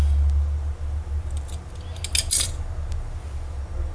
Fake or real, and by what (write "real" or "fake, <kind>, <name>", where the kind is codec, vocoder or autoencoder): real